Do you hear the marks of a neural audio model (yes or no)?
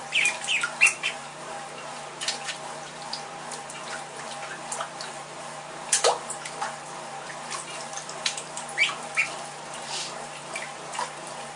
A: yes